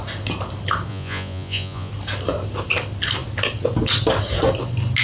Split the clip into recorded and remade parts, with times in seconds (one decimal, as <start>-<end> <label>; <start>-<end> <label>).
0.0-0.9 recorded; 0.9-1.9 remade; 1.9-5.0 recorded